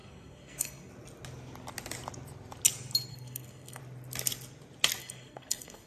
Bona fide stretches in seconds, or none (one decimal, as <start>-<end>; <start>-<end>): 0.9-3.1; 3.8-5.0